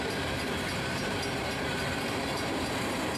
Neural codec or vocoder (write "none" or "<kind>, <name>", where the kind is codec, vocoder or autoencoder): vocoder, BigVGAN v2